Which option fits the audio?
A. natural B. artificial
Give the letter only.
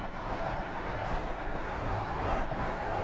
B